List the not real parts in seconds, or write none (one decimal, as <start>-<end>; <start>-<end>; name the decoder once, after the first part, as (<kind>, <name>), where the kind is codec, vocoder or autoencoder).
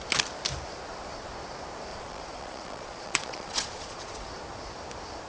1.9-4.3 (vocoder, Vocos)